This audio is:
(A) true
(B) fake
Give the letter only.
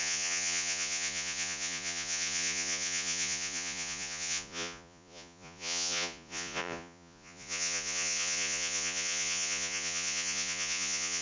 B